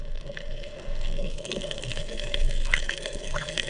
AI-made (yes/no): yes